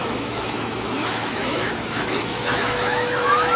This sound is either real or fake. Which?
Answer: fake